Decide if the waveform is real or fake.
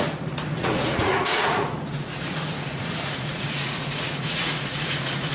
fake